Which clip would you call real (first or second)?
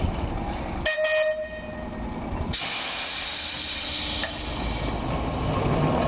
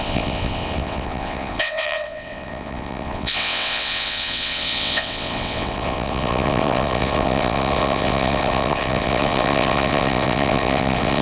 first